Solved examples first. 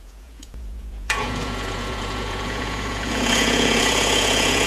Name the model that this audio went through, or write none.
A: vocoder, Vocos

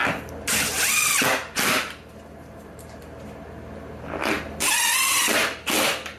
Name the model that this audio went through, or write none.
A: none